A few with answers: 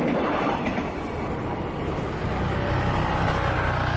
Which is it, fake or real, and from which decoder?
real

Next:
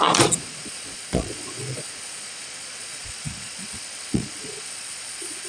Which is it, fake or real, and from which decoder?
fake, vocoder, Vocos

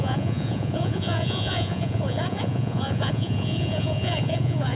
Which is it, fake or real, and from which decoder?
fake, vocoder, Vocos